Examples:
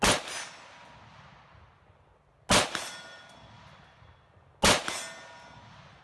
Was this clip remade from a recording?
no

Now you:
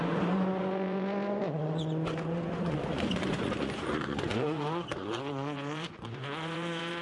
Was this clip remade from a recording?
yes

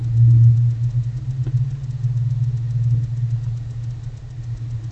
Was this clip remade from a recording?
no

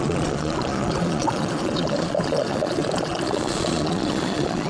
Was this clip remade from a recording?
yes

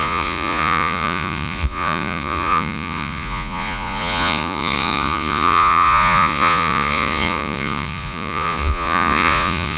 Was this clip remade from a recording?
yes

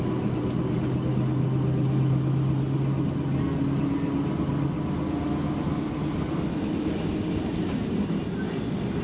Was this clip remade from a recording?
no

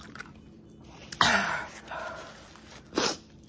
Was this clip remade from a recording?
no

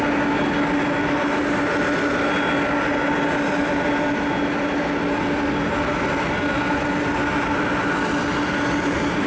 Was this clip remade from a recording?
no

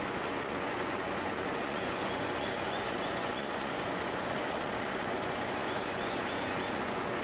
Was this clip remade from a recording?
yes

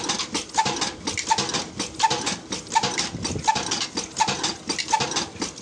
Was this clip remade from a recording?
no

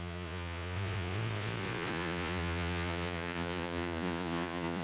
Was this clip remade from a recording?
yes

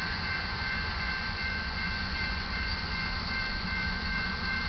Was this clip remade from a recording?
yes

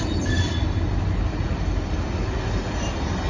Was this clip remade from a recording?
no